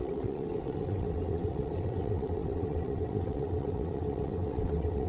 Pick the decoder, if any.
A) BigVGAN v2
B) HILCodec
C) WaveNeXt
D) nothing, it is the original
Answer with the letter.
C